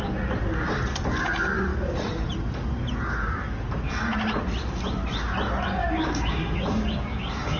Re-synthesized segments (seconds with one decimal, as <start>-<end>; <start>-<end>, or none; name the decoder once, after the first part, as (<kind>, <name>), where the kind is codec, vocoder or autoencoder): 5.8-7.6 (codec, DAC)